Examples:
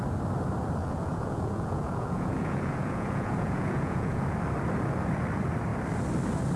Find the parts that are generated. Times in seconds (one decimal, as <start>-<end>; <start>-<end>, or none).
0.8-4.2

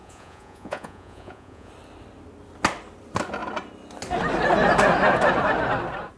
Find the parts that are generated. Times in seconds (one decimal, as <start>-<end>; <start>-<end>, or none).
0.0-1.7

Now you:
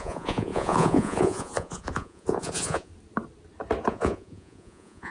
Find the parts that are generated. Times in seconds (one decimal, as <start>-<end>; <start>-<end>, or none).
0.0-2.9; 3.9-5.1

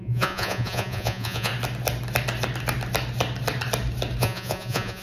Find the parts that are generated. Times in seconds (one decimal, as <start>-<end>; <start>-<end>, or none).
0.0-1.5; 4.2-5.0

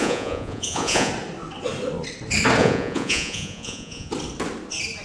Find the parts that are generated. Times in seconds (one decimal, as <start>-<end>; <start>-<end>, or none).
0.0-1.1; 2.6-4.1

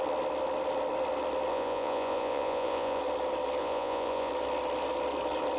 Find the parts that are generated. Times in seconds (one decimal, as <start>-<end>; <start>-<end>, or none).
1.5-3.0; 3.6-4.3

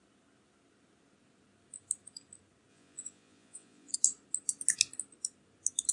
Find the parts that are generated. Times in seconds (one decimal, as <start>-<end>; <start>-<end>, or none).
2.7-3.9

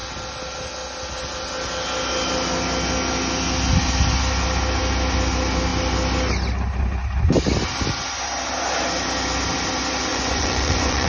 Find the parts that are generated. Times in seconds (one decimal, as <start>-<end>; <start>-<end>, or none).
10.1-11.1